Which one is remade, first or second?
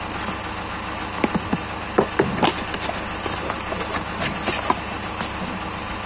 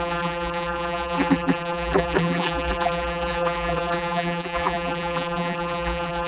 second